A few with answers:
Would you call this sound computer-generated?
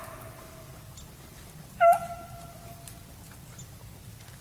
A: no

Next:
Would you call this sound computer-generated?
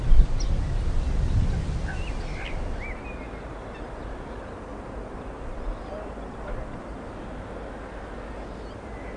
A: no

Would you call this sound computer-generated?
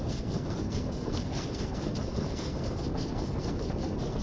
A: yes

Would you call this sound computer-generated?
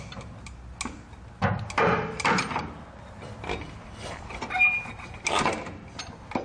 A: no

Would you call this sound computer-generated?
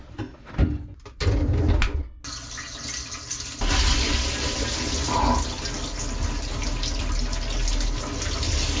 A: no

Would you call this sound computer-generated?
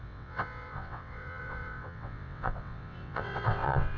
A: yes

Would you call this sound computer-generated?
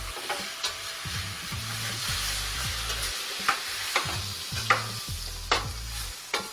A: no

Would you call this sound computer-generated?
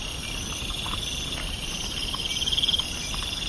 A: no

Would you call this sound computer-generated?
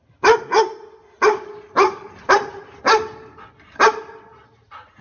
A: no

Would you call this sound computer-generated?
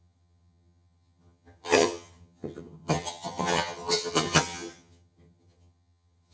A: yes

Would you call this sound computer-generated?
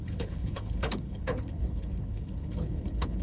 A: yes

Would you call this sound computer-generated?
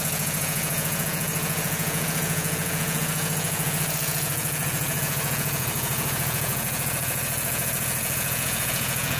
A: yes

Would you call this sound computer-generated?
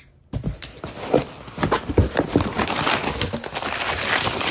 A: no